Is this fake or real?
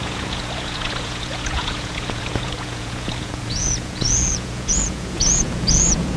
fake